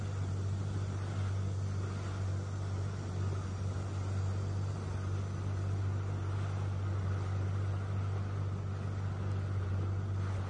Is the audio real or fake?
real